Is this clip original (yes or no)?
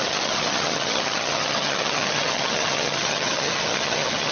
no